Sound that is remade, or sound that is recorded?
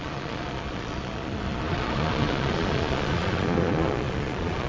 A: remade